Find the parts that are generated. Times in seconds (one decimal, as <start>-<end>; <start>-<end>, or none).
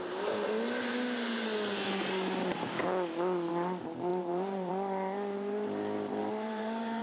4.1-4.7; 6.2-7.0